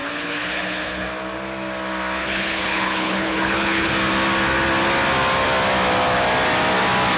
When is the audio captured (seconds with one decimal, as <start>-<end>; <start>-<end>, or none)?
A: 1.1-2.2; 3.9-7.2